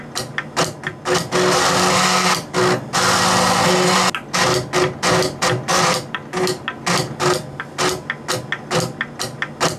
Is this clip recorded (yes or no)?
yes